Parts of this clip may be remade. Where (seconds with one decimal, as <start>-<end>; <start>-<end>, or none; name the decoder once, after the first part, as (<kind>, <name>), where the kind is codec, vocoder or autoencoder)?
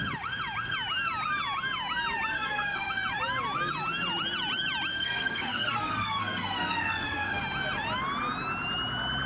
2.3-2.9 (codec, SNAC); 4.9-7.4